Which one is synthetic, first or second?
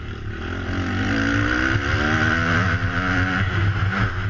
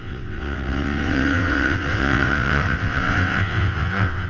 second